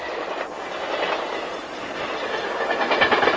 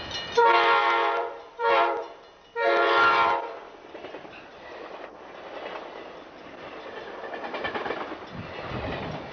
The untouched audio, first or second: first